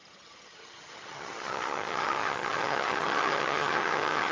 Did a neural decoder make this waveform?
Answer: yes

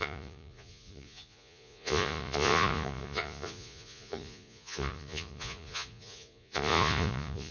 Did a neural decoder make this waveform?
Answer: yes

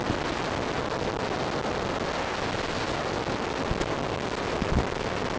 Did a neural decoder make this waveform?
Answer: no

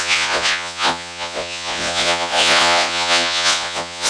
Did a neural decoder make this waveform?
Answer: yes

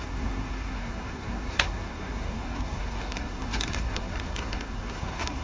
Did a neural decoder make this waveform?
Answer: yes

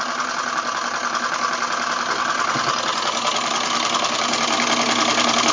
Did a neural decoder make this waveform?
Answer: no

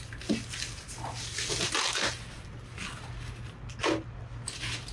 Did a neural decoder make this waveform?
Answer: no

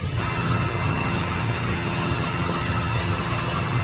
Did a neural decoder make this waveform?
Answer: yes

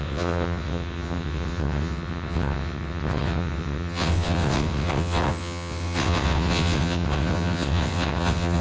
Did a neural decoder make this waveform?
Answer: yes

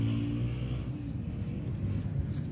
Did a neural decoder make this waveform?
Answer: no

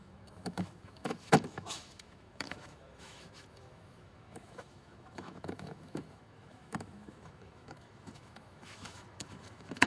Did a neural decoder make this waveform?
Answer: yes